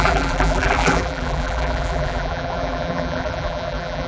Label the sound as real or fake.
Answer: fake